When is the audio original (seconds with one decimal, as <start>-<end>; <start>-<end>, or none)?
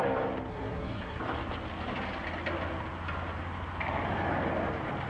0.0-0.5; 1.2-5.1